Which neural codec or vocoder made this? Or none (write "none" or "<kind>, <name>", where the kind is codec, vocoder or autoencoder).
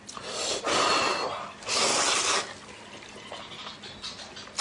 none